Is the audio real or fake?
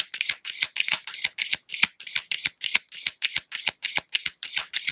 fake